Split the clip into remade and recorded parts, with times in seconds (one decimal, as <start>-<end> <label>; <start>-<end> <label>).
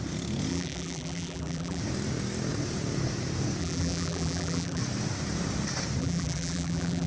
0.0-0.5 recorded; 0.5-1.8 remade; 1.8-3.6 recorded; 3.6-4.8 remade; 4.8-6.0 recorded; 6.0-7.1 remade